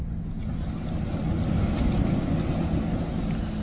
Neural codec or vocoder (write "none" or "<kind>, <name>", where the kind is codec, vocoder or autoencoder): none